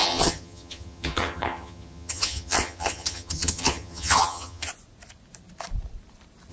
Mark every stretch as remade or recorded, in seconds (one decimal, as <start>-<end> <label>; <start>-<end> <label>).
0.0-4.7 remade; 4.7-6.5 recorded